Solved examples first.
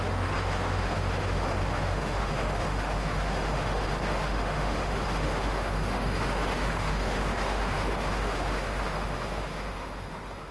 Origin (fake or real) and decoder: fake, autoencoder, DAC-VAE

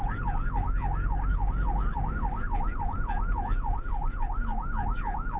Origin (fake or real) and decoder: real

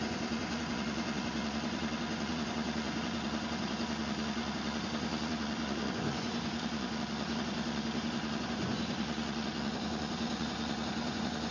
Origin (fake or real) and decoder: fake, vocoder, Vocos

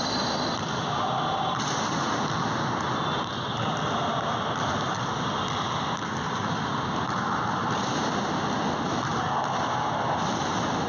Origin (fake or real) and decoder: real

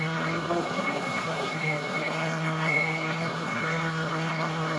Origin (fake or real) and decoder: fake, codec, SNAC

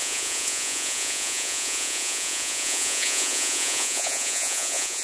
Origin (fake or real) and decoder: fake, vocoder, Vocos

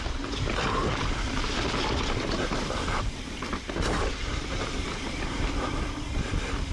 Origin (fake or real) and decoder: real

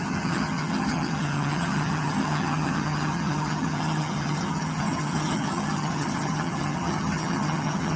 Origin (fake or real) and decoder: fake, vocoder, HiFi-GAN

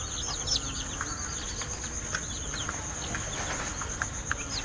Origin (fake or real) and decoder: real